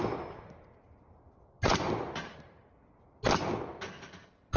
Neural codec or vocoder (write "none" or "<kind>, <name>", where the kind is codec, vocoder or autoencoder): none